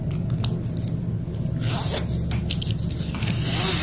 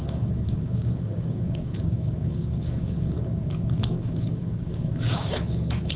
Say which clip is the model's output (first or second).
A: second